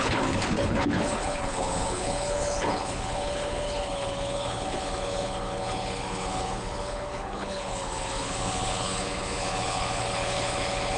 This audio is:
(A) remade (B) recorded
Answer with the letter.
A